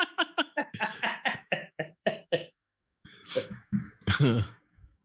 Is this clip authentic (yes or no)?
no